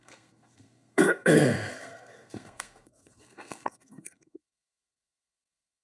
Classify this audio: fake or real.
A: fake